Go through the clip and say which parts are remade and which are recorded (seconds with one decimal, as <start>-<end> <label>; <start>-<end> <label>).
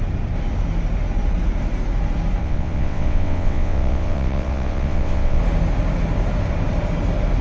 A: 0.0-2.4 recorded; 2.4-5.4 remade; 5.4-7.4 recorded